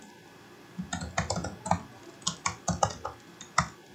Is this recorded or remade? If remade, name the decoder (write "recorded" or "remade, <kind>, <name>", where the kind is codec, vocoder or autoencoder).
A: recorded